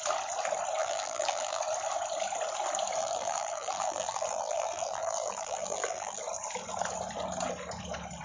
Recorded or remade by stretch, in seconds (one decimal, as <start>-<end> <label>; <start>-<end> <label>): 0.0-0.8 recorded; 0.8-1.6 remade; 1.6-3.0 recorded; 3.0-6.2 remade; 6.2-8.2 recorded